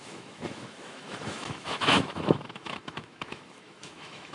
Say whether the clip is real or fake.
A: fake